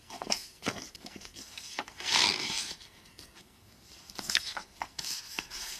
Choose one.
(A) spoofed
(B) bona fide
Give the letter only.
A